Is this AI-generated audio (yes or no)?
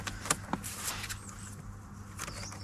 no